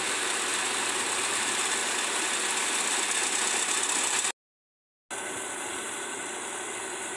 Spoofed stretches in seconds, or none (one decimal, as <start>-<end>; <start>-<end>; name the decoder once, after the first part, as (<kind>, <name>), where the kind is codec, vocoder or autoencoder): 0.0-0.5 (vocoder, BigVGAN v2); 1.0-1.8; 5.6-7.2